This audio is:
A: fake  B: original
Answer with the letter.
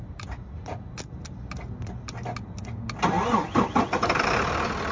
B